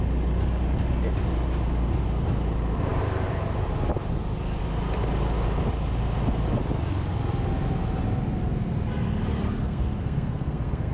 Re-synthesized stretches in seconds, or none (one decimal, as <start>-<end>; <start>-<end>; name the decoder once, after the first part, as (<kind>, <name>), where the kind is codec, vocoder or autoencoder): 9.6-10.9 (codec, SNAC)